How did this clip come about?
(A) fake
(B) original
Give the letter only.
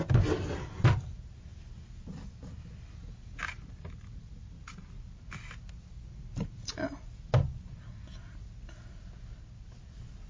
B